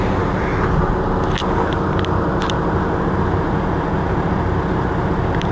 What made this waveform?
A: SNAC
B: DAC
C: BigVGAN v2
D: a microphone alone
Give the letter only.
D